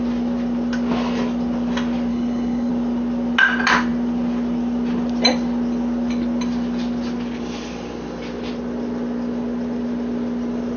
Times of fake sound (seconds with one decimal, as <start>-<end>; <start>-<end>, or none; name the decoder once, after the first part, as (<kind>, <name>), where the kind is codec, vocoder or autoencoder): 2.1-2.7 (codec, HILCodec)